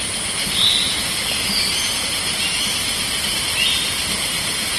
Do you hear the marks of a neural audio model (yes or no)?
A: no